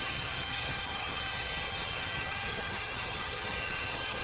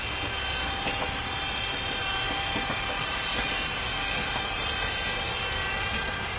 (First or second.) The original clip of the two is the second